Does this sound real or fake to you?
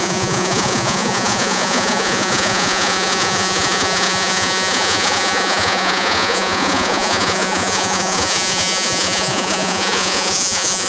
fake